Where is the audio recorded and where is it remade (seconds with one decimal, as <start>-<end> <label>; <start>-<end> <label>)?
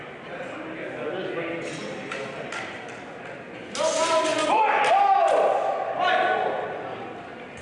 0.0-7.6 recorded